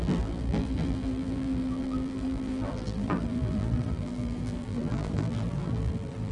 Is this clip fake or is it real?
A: fake